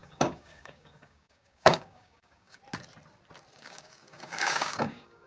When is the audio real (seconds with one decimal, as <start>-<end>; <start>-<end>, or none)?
2.6-3.6